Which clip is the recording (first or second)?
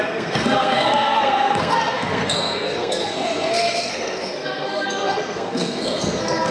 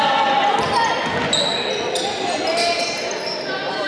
second